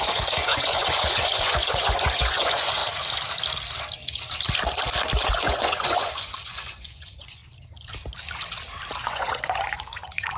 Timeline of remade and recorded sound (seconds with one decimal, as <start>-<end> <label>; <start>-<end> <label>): 0.0-2.8 remade; 2.8-5.3 recorded; 5.3-7.4 remade; 7.4-9.0 recorded; 9.0-10.4 remade